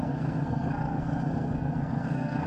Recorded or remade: remade